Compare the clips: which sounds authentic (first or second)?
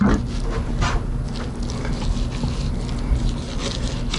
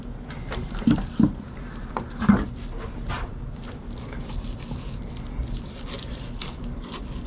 first